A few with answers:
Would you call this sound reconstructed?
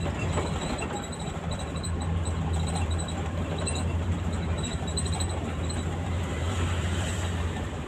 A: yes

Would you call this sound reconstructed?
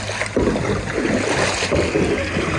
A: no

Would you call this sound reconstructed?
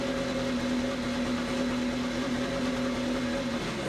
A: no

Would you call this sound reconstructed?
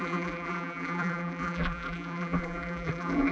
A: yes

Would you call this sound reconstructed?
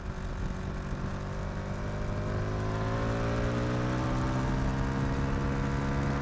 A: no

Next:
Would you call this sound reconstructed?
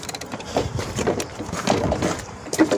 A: yes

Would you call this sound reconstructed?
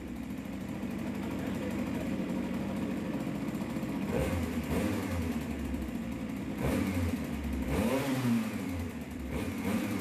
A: yes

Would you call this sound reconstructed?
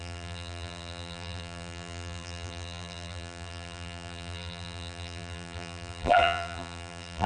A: yes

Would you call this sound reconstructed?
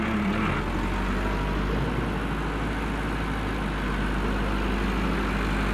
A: no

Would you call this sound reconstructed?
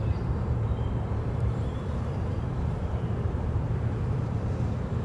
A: yes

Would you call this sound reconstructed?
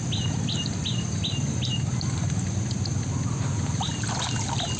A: no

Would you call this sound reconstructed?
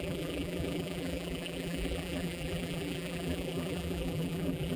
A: yes